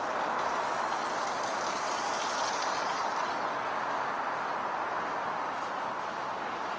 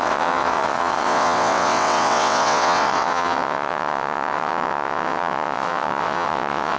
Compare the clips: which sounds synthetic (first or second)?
second